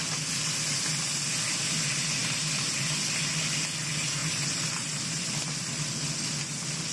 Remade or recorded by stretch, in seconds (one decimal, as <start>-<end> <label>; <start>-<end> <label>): 0.0-2.2 recorded; 2.2-2.8 remade; 2.8-4.2 recorded; 4.2-5.3 remade; 5.3-6.9 recorded